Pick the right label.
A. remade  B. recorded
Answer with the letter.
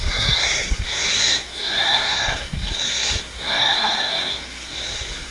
A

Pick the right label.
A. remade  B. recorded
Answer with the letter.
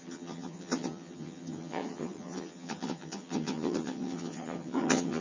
A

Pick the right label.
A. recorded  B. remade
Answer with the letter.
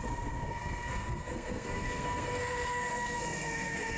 B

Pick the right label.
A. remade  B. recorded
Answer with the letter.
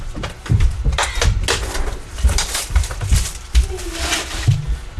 B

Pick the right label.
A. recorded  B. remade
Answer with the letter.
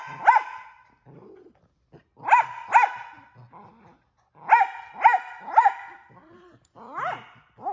A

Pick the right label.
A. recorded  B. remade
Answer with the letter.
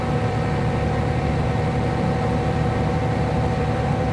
B